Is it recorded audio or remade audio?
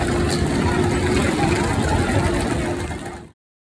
recorded